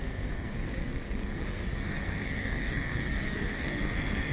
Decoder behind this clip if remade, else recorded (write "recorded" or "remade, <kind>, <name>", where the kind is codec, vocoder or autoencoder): remade, codec, SNAC